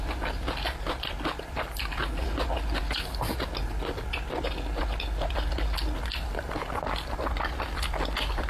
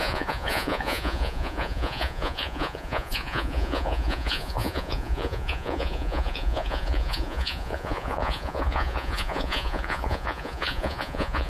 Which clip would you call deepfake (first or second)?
second